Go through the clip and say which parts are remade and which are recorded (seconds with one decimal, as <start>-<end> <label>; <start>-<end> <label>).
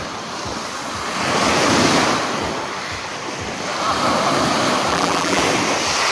0.0-4.9 recorded; 4.9-5.4 remade; 5.4-6.1 recorded